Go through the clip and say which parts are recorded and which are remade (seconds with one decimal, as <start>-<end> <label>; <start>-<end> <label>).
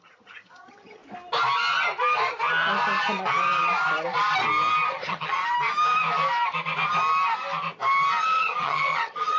0.0-1.0 remade; 1.0-4.9 recorded; 4.9-5.4 remade; 5.4-8.2 recorded; 8.2-9.4 remade